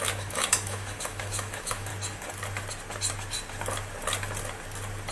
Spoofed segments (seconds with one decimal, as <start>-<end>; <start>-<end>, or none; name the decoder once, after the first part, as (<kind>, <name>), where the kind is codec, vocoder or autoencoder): 0.0-1.9 (autoencoder, DAC-VAE)